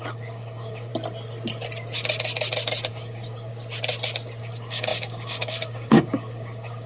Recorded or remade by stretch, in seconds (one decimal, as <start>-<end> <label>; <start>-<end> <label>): 0.0-0.9 remade; 0.9-2.9 recorded; 2.9-3.5 remade; 3.5-4.4 recorded; 4.4-6.9 remade